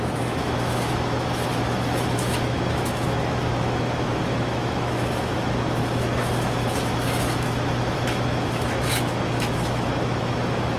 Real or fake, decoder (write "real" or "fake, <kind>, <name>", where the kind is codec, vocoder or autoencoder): fake, autoencoder, DAC-VAE